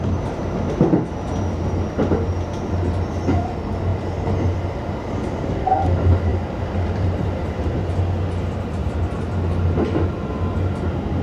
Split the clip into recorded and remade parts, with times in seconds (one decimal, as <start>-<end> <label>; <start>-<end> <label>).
0.0-3.9 recorded; 3.9-4.6 remade; 4.6-6.3 recorded; 6.3-7.6 remade; 7.6-8.8 recorded; 8.8-9.3 remade; 9.3-11.2 recorded